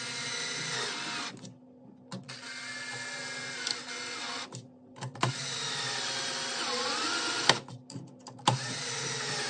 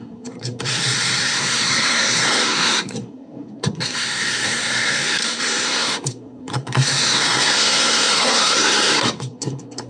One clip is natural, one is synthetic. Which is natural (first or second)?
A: first